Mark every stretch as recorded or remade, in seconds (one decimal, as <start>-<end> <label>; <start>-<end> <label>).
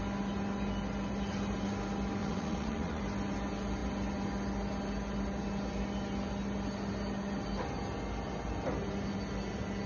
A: 0.0-2.2 recorded; 2.2-3.0 remade; 3.0-9.9 recorded